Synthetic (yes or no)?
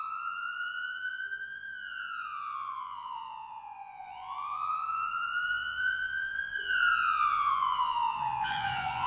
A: yes